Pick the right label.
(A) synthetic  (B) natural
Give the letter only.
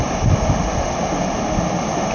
B